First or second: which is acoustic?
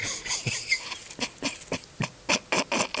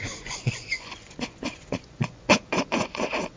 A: first